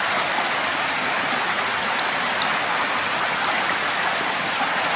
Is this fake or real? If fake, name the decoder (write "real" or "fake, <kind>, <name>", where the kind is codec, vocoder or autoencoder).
real